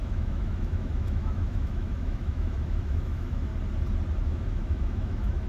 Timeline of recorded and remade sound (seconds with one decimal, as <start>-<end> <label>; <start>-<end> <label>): 0.0-3.5 remade; 3.5-4.2 recorded; 4.2-5.5 remade